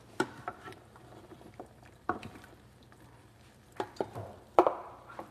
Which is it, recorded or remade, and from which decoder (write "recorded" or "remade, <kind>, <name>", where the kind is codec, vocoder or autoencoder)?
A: remade, vocoder, BigVGAN v2